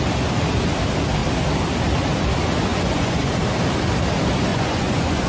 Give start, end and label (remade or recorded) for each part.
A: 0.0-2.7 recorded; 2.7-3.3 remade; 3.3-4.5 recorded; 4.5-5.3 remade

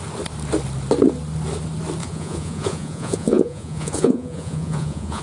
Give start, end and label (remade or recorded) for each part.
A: 0.0-2.0 recorded; 2.0-5.2 remade

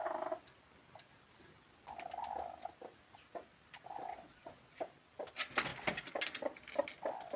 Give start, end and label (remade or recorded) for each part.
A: 0.0-4.1 recorded; 4.1-4.8 remade; 4.8-7.4 recorded